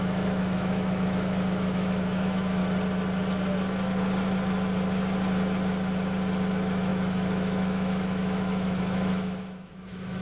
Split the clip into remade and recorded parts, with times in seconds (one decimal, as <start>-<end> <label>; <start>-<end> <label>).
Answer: 0.0-2.6 remade; 2.6-6.5 recorded; 6.5-10.2 remade